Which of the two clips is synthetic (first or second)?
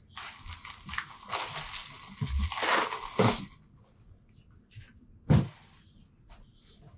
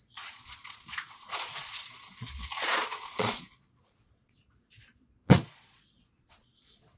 second